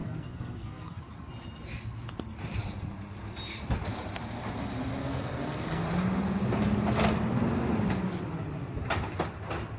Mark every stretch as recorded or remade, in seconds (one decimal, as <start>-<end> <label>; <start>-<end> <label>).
0.0-1.0 remade; 1.0-5.0 recorded; 5.0-5.8 remade; 5.8-9.8 recorded